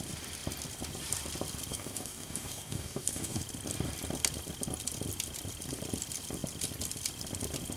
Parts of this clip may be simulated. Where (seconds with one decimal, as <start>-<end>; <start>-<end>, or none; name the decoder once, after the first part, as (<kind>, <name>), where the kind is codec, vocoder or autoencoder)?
1.7-3.4 (codec, DAC)